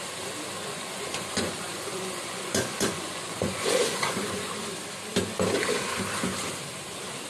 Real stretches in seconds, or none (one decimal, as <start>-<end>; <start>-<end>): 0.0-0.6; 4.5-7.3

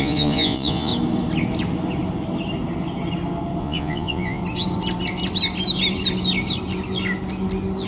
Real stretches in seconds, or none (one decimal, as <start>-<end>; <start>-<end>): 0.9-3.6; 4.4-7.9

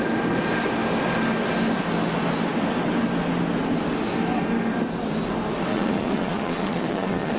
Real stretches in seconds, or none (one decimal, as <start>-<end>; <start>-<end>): 0.0-5.7

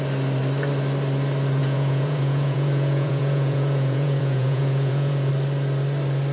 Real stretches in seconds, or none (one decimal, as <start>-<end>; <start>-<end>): 0.0-1.6; 5.3-6.3

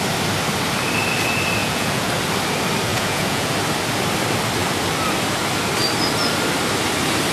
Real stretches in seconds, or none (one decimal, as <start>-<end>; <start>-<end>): 0.0-1.6; 2.1-2.9; 3.5-7.3

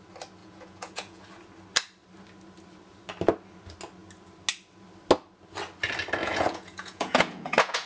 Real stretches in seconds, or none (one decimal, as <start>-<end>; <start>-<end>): 0.0-0.4; 1.2-6.2

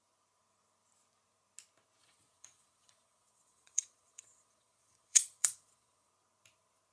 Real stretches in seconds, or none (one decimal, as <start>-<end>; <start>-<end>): 0.0-2.0; 6.1-6.9

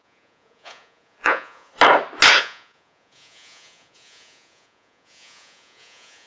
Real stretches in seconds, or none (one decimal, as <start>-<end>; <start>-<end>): 1.7-2.4